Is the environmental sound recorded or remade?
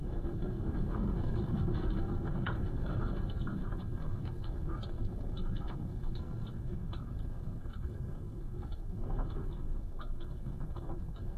remade